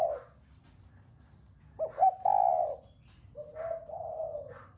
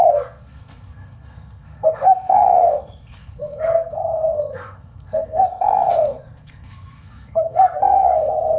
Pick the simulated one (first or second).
second